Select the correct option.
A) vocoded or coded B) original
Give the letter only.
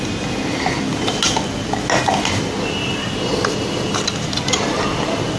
B